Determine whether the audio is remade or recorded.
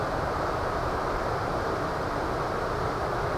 recorded